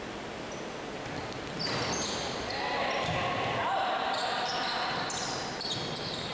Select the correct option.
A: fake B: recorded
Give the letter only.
B